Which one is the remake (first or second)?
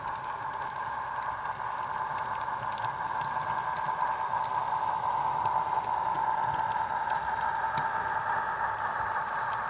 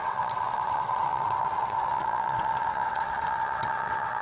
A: second